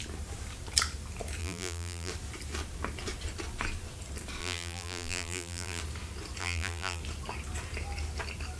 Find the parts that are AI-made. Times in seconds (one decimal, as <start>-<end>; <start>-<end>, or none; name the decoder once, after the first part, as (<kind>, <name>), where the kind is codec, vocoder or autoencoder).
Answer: 1.4-2.1 (vocoder, BigVGAN v2); 4.4-5.8; 6.4-7.0